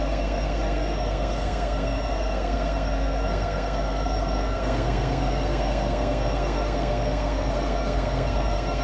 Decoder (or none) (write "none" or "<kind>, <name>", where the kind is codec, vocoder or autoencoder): codec, SNAC